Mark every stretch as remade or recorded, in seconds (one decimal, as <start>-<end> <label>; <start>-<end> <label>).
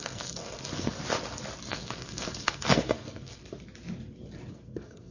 0.0-1.0 remade; 1.0-1.7 recorded; 1.7-3.4 remade; 3.4-4.5 recorded; 4.5-5.1 remade